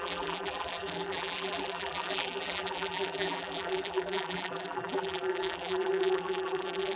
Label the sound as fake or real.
fake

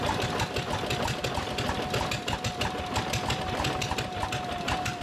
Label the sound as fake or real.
real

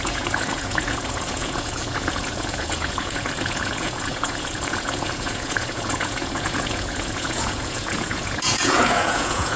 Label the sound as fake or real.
fake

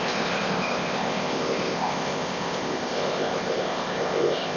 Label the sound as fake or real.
fake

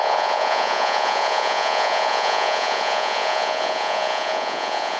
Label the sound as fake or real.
fake